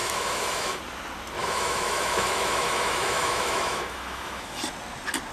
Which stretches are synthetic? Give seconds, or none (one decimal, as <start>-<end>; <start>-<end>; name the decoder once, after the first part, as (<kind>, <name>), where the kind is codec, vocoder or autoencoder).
0.0-0.8 (autoencoder, DAC-VAE); 1.4-4.6